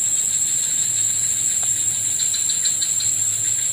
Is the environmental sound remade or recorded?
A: remade